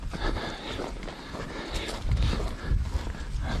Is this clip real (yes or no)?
yes